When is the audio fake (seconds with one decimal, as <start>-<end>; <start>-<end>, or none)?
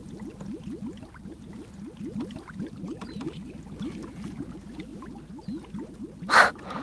none